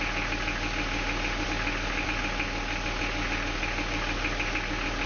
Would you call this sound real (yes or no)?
yes